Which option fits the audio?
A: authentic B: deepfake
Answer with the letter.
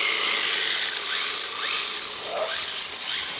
A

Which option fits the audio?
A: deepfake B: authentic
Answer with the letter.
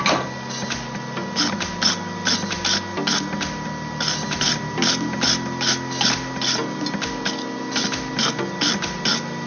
B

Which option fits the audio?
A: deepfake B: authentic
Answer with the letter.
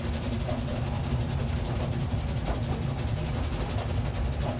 B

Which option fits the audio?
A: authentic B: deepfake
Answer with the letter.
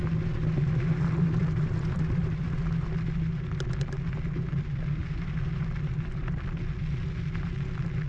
A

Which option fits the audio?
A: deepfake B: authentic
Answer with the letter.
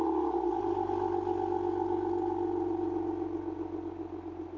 B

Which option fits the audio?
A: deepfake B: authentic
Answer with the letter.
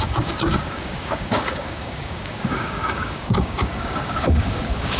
A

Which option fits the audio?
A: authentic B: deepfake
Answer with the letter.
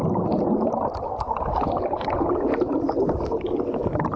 A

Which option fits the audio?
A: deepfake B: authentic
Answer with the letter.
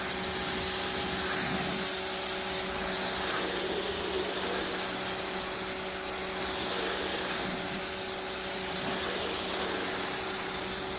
B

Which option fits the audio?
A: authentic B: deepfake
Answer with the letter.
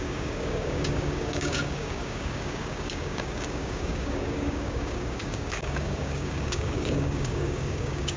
B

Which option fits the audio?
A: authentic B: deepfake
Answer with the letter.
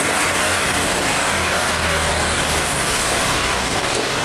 B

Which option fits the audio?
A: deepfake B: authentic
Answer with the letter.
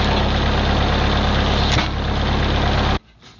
B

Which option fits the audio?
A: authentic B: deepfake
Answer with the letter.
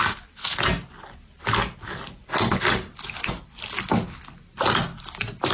A